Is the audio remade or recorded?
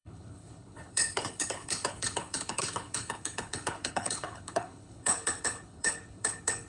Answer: remade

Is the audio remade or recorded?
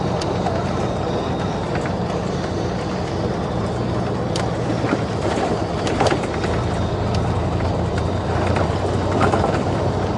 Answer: remade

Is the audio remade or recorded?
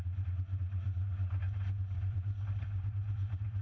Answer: remade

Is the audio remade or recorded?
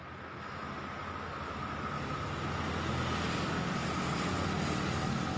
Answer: recorded